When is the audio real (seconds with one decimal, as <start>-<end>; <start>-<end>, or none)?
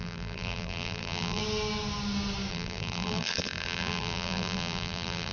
1.4-2.5